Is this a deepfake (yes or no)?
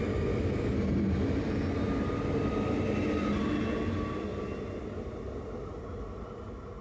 no